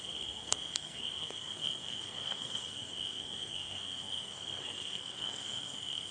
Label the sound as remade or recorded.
remade